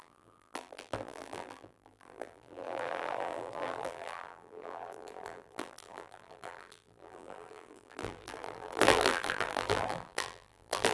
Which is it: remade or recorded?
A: remade